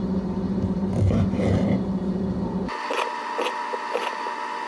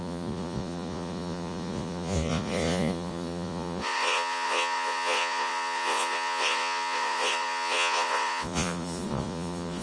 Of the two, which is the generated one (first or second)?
second